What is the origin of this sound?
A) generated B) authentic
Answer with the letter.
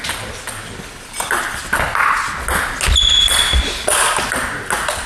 B